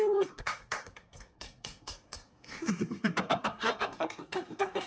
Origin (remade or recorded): remade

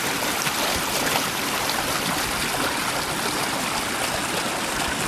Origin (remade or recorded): recorded